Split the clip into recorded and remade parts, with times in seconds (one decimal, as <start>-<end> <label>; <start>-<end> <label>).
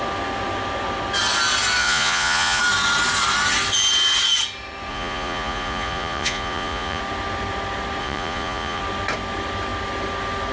0.0-1.8 recorded; 1.8-2.6 remade; 2.6-4.9 recorded; 4.9-7.0 remade; 7.0-8.0 recorded; 8.0-8.8 remade; 8.8-10.5 recorded